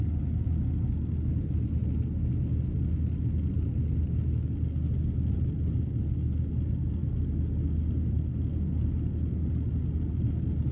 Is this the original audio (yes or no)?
yes